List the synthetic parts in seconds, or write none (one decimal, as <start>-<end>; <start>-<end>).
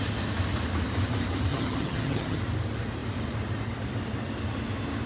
1.5-2.4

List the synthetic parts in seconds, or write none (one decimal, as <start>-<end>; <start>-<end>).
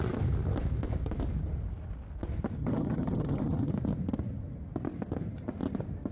2.6-3.7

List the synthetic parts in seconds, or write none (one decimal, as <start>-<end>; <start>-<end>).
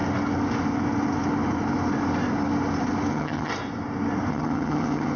3.1-3.5; 4.3-5.2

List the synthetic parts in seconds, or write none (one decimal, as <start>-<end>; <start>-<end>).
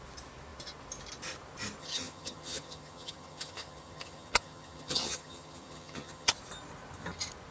1.8-6.3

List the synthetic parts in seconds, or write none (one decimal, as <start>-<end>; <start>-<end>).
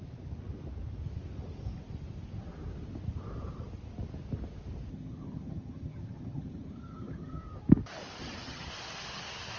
4.9-7.4; 8.2-8.7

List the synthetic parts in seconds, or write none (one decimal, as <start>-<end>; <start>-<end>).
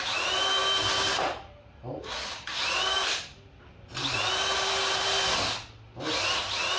none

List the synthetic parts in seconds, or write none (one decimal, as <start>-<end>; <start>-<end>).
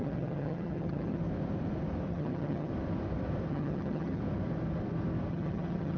0.0-1.2; 2.1-2.7; 3.5-4.2; 5.3-6.0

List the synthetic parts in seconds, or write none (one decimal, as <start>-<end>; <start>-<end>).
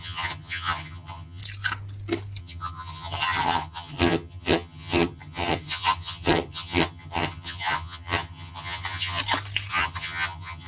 0.0-1.4; 2.4-9.2; 9.7-10.7